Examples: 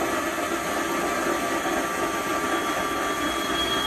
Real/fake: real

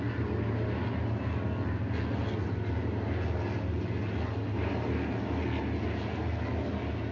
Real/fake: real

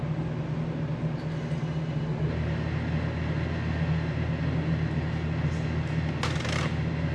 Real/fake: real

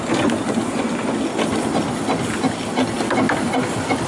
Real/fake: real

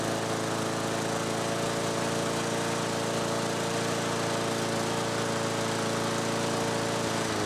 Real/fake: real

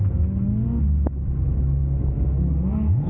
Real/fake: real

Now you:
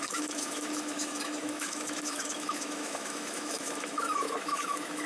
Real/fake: fake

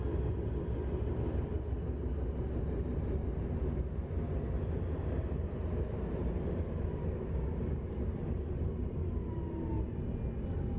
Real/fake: real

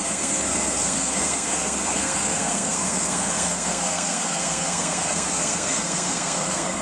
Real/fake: fake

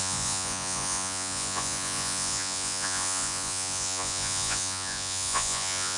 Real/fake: fake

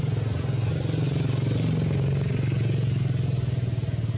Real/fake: real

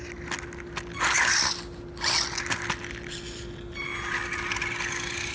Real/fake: real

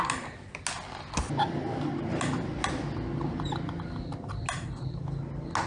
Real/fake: real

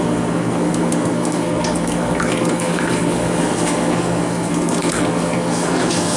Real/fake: fake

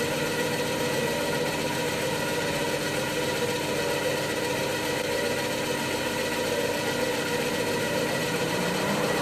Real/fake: fake